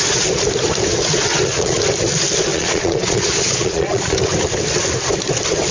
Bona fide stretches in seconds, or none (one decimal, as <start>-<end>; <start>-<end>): 0.0-1.3; 1.8-2.5; 4.2-5.7